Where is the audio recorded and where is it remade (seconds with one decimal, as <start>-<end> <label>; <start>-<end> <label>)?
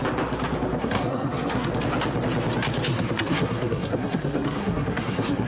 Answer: 0.0-0.8 recorded; 0.8-1.7 remade; 1.7-2.9 recorded; 2.9-5.5 remade